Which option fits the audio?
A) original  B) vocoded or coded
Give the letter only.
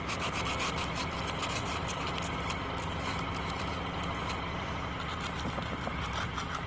A